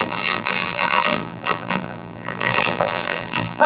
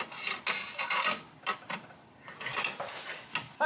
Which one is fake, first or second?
first